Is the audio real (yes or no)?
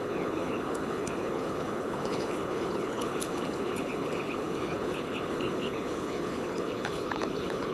no